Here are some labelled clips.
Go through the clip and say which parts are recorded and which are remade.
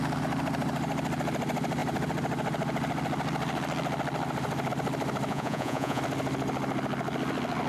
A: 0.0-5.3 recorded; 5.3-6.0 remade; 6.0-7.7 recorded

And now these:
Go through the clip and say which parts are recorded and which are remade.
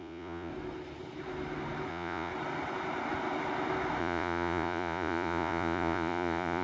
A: 0.0-0.5 remade; 0.5-1.9 recorded; 1.9-2.3 remade; 2.3-4.0 recorded; 4.0-6.6 remade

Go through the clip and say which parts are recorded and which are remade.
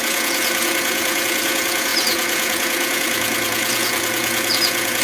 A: 0.0-5.0 remade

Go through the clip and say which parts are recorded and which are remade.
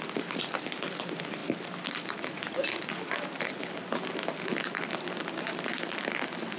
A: 0.0-6.6 recorded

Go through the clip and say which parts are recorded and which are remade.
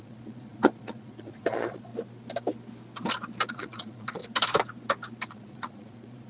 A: 0.0-1.9 remade; 1.9-3.5 recorded; 3.5-4.2 remade; 4.2-5.3 recorded; 5.3-6.3 remade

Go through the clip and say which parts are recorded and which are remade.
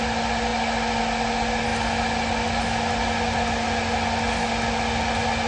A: 0.0-5.5 recorded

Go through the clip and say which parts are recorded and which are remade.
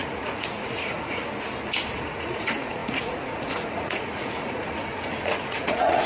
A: 0.0-1.2 remade; 1.2-1.9 recorded; 1.9-6.1 remade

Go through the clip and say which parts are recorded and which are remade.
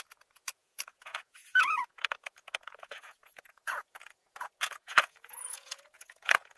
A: 0.0-6.6 remade